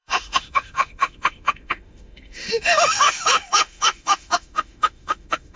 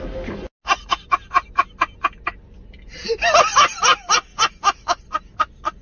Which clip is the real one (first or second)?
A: second